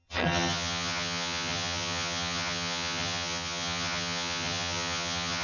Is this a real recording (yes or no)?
no